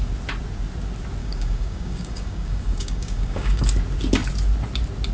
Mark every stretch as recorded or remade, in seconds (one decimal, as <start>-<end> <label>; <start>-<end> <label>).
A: 0.0-1.2 recorded; 1.2-3.6 remade; 3.6-5.1 recorded